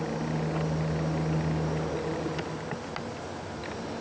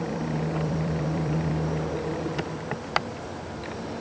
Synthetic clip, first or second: second